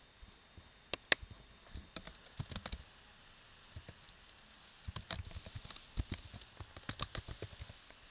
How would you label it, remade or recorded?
recorded